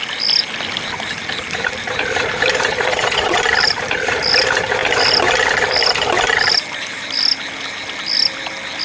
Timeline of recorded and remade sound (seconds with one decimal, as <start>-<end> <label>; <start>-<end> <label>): 0.0-2.7 recorded; 2.7-3.4 remade; 3.4-8.8 recorded